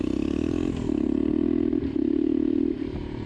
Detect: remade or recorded recorded